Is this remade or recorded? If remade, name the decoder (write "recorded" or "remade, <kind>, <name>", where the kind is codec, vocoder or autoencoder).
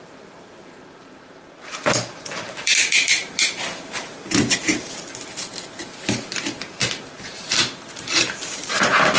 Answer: remade, vocoder, BigVGAN v2